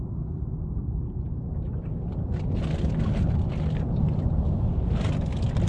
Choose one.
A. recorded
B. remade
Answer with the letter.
A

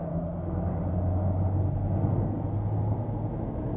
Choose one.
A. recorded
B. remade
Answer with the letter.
A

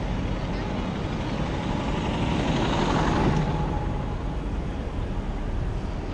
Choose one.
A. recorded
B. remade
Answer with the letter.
A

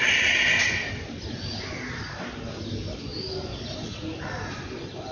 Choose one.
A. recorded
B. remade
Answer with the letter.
A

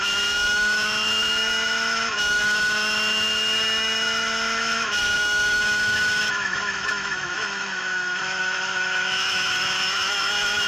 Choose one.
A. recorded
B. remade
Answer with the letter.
B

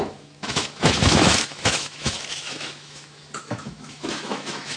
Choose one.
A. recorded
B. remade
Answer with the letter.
B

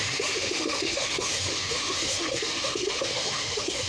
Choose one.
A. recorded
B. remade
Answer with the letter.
B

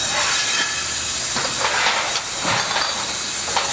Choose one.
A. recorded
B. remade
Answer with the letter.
A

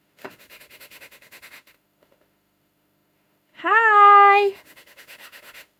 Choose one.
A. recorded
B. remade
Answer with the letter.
B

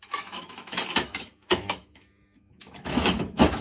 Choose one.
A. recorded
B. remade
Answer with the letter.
B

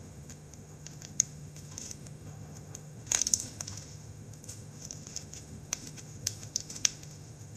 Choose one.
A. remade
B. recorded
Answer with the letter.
A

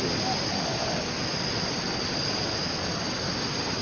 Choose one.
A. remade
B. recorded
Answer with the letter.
B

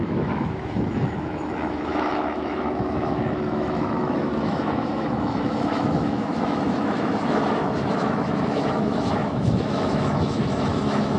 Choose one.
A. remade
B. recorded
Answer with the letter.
A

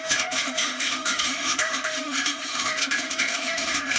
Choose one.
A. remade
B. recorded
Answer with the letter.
A